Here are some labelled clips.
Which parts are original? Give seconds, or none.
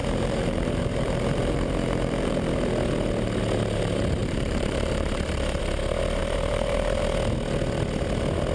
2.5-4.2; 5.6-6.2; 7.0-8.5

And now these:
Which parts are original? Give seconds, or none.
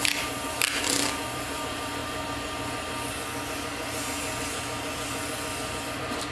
2.0-5.8